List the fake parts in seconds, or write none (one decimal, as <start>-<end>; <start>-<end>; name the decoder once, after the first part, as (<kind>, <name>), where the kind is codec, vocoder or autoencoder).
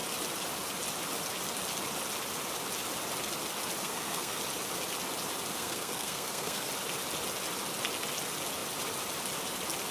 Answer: 3.8-4.4 (codec, SNAC); 5.5-6.7